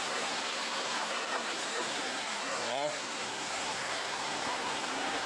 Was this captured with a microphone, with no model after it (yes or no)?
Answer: no